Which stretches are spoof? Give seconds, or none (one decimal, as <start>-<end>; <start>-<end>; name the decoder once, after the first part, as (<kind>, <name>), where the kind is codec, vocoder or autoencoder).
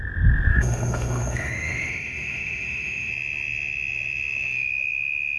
0.5-3.1 (autoencoder, DAC-VAE)